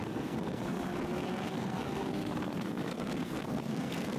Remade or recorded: remade